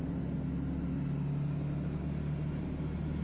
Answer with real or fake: real